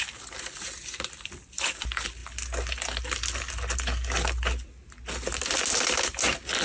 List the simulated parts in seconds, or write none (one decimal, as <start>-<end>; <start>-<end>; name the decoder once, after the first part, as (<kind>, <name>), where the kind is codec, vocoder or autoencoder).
none

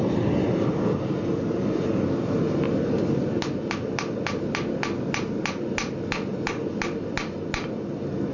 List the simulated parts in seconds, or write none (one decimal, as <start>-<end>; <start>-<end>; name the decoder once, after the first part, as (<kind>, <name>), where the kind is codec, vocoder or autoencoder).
none

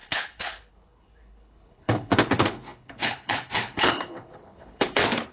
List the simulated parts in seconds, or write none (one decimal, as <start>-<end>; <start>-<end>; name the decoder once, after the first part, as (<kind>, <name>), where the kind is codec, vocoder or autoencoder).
0.0-5.3 (codec, HILCodec)

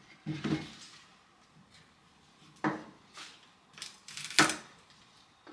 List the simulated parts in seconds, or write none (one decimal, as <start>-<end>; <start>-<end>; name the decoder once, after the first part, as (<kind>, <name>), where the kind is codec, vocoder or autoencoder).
none

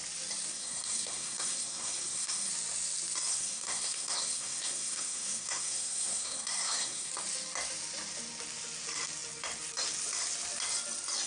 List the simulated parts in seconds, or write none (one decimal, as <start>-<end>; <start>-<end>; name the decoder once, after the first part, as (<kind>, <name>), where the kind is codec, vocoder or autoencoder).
0.5-2.5 (codec, SNAC); 3.3-7.1

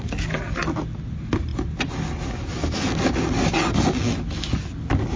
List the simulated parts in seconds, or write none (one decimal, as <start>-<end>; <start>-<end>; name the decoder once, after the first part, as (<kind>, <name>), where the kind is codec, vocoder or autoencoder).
none

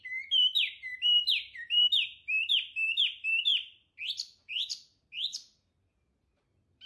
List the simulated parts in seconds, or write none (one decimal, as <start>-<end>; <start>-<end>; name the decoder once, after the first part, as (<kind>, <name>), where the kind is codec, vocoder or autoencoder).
none

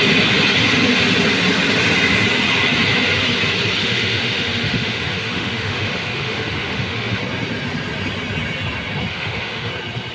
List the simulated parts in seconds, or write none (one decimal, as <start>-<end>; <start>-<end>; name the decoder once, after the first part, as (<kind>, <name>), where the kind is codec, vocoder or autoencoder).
3.8-7.2 (autoencoder, DAC-VAE); 9.1-9.7